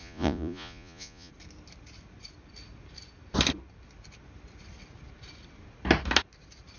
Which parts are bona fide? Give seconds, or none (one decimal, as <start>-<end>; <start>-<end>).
1.3-6.8